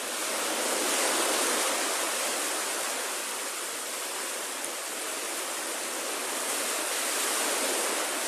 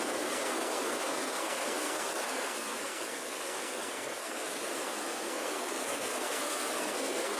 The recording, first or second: first